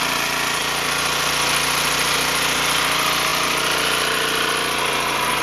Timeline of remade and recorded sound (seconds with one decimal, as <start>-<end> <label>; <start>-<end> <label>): 0.0-5.4 recorded